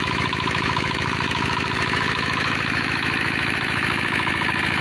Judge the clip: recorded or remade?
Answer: remade